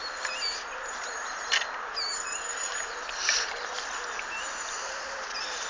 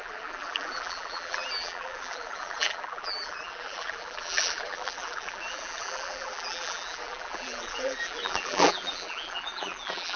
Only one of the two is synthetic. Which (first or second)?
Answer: second